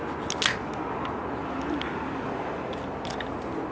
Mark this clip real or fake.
real